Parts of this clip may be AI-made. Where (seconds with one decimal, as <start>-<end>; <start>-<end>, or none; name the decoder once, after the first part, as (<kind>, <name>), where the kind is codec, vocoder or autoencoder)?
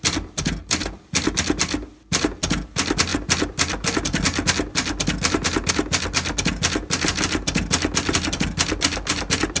none